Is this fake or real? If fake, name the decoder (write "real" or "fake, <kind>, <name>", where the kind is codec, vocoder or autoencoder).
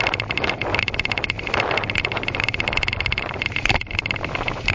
real